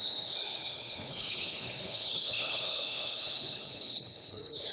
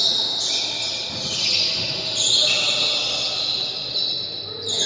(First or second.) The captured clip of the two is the second